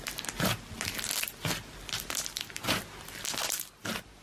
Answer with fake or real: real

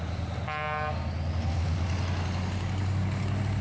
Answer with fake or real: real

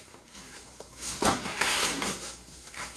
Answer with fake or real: fake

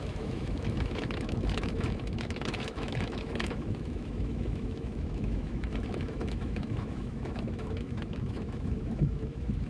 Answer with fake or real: fake